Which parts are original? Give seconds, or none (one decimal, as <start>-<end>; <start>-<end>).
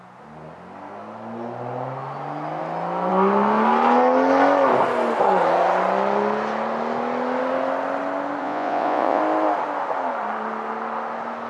0.0-8.4; 9.2-11.5